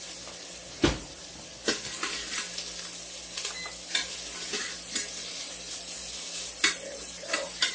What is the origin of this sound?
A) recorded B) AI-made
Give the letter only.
A